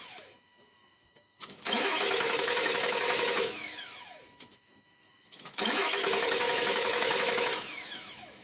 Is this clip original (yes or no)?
no